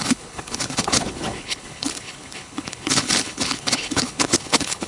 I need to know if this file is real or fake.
fake